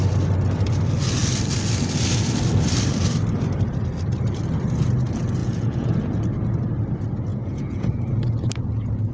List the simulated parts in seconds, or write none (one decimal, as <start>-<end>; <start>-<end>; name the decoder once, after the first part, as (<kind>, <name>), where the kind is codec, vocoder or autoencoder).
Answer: 5.4-6.2 (vocoder, Vocos); 7.3-8.0